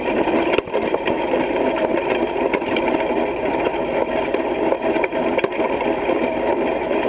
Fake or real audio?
fake